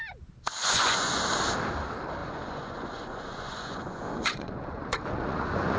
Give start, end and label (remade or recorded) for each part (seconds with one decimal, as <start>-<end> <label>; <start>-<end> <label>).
0.0-0.6 recorded; 0.6-1.2 remade; 1.2-2.2 recorded; 2.2-5.8 remade